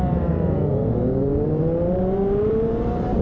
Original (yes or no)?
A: no